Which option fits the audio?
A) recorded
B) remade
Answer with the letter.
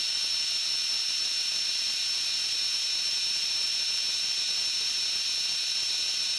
A